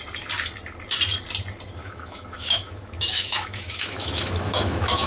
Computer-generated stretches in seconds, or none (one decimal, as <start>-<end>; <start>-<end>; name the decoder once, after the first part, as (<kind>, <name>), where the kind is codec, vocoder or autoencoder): 1.8-5.1 (autoencoder, DAC-VAE)